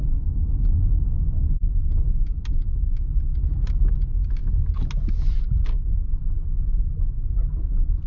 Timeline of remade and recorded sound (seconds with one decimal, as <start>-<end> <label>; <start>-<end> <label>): 0.0-8.1 recorded